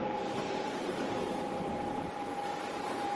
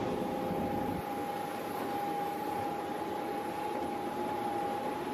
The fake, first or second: first